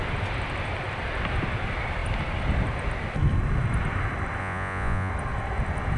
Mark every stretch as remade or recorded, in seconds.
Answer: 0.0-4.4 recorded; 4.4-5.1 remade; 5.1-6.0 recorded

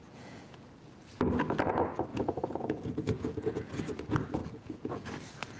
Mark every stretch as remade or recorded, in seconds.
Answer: 0.0-0.6 remade; 0.6-2.1 recorded; 2.1-3.8 remade; 3.8-4.4 recorded; 4.4-5.1 remade; 5.1-5.6 recorded

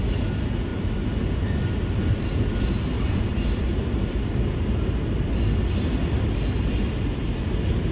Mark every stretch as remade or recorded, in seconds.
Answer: 0.0-7.9 recorded

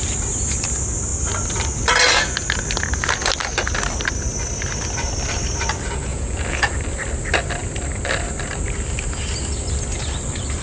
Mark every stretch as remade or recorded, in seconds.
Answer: 0.0-6.1 recorded; 6.1-6.7 remade; 6.7-10.6 recorded

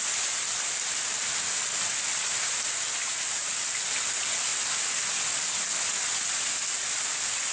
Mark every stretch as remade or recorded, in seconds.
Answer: 0.0-7.5 recorded

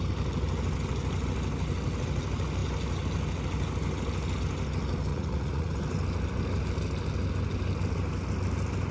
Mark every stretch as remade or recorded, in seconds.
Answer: 0.0-5.1 recorded; 5.1-5.7 remade; 5.7-8.9 recorded

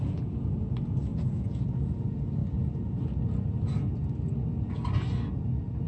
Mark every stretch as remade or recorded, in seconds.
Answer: 0.0-2.4 remade; 2.4-5.9 recorded

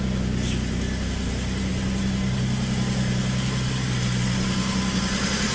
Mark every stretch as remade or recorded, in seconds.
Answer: 0.0-5.5 recorded